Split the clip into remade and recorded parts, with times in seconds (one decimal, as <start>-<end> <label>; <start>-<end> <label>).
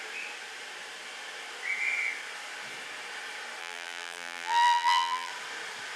0.0-3.6 recorded; 3.6-5.3 remade; 5.3-6.0 recorded